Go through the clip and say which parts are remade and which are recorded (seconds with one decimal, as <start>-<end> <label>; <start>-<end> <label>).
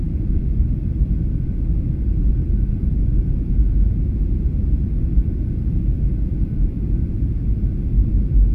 0.0-0.5 remade; 0.5-1.5 recorded; 1.5-8.5 remade